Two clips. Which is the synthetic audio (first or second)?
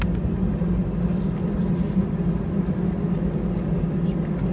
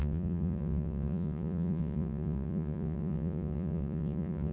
second